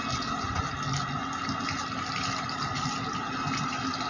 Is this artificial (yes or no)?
no